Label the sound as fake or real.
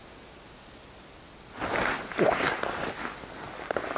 real